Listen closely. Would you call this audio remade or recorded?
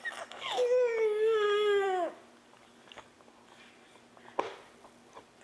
recorded